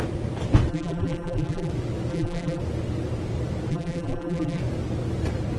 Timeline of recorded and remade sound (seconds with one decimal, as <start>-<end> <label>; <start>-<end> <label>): 0.0-0.7 recorded; 0.7-1.7 remade; 1.7-2.1 recorded; 2.1-2.6 remade; 2.6-3.7 recorded; 3.7-4.6 remade; 4.6-5.6 recorded